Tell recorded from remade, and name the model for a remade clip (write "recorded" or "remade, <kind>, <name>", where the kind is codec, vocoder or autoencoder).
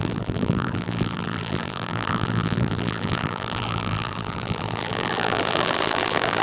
remade, vocoder, BigVGAN v2